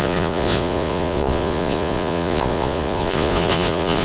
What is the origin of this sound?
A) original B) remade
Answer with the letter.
B